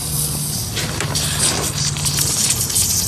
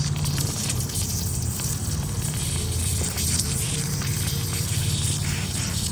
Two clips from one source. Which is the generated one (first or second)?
second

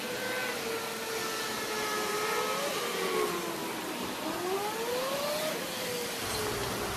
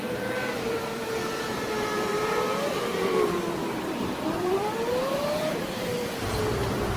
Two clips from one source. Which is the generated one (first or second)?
second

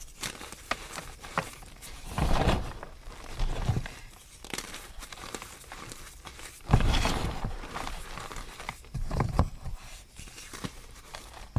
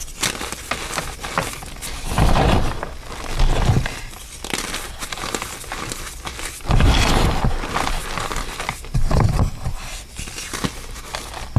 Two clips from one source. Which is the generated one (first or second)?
first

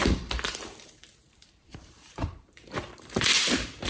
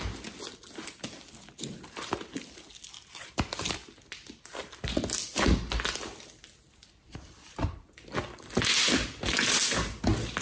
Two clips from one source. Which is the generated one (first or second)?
first